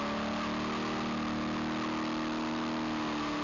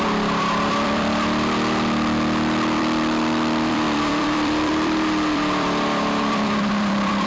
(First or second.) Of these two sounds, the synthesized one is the second